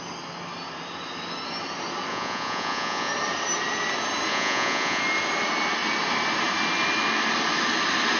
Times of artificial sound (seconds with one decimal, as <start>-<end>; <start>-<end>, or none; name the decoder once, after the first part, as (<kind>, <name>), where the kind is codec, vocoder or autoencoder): 2.1-3.1 (vocoder, Vocos); 4.3-5.0